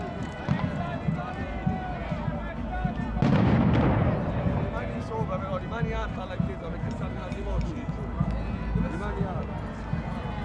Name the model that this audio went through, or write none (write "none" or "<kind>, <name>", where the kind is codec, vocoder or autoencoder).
none